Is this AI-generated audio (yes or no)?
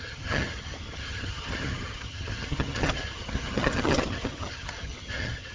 yes